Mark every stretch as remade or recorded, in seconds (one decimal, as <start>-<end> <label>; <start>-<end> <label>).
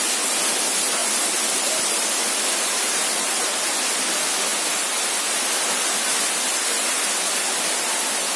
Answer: 0.0-8.4 recorded